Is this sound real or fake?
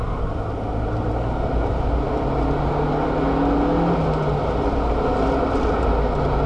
real